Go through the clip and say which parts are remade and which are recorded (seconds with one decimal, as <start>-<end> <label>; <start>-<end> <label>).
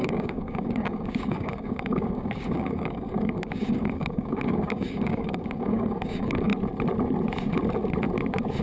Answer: 0.0-6.5 remade; 6.5-8.6 recorded